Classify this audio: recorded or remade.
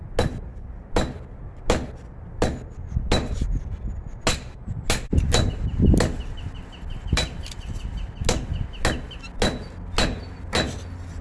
recorded